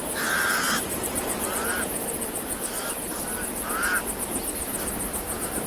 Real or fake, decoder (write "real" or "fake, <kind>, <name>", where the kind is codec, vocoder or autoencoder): real